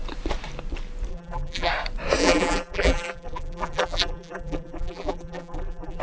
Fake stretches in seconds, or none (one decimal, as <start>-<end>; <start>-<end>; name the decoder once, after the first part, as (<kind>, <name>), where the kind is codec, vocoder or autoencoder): 1.1-1.7 (vocoder, BigVGAN v2); 2.2-6.0